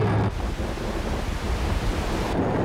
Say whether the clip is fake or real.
real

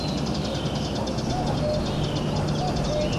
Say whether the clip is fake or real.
real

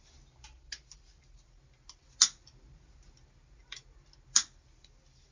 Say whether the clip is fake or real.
real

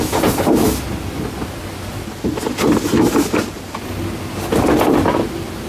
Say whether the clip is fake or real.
real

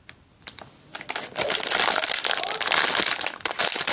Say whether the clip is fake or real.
real